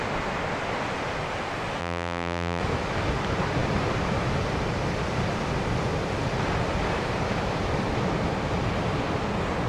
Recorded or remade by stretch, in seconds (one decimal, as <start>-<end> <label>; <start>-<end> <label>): 0.0-1.8 recorded; 1.8-2.6 remade; 2.6-9.7 recorded